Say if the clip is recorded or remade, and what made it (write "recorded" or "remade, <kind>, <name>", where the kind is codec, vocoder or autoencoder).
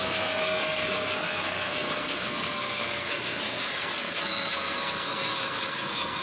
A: remade, codec, SNAC